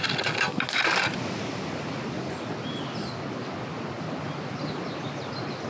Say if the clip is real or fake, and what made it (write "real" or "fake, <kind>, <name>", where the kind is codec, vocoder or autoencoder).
real